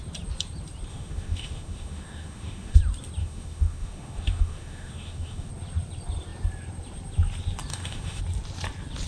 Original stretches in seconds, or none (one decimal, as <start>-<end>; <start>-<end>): 0.0-0.9; 2.8-3.2; 5.5-7.7; 8.2-9.1